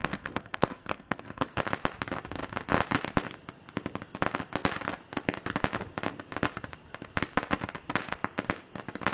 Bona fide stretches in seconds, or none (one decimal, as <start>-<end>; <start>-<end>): 1.6-9.1